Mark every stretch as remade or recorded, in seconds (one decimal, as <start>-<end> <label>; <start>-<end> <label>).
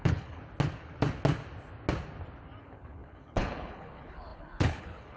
0.0-0.4 remade; 0.4-2.6 recorded; 2.6-5.2 remade